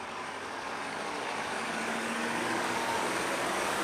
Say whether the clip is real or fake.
fake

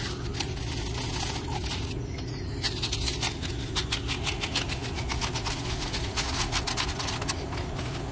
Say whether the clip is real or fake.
real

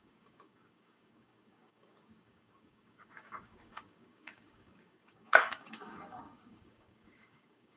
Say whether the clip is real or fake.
fake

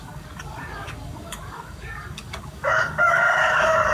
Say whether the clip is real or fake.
fake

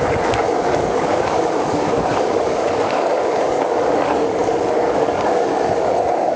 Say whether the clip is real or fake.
fake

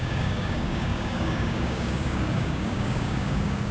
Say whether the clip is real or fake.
fake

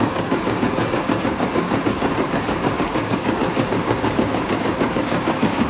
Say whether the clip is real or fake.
fake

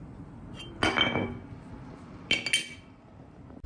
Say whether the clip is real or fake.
real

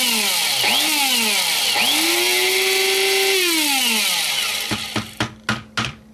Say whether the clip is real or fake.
real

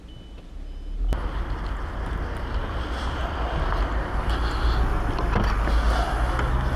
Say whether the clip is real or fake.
real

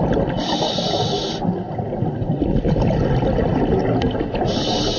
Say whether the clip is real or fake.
real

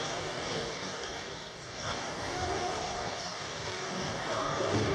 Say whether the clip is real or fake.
fake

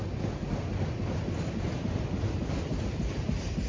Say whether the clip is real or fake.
real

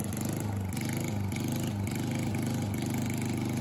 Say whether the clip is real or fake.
real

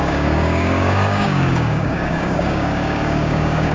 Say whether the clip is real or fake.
fake